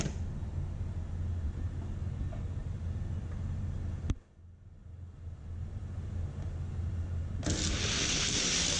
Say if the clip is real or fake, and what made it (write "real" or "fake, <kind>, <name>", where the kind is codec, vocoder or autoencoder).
real